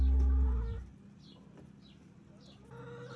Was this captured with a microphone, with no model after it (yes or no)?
yes